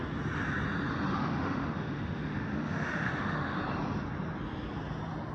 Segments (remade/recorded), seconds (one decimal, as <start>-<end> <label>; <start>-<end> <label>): 0.0-1.1 recorded; 1.1-3.6 remade; 3.6-5.3 recorded